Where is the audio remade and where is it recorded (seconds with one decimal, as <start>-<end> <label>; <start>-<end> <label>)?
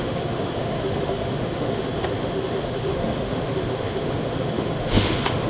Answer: 0.0-5.5 remade